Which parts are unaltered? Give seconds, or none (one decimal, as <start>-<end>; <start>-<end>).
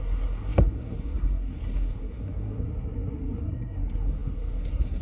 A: none